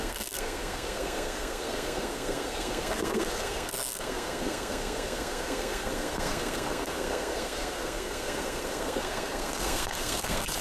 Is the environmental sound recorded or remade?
remade